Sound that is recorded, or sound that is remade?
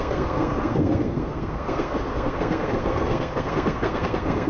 remade